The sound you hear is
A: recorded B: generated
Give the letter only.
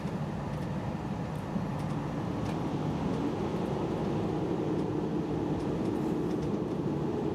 A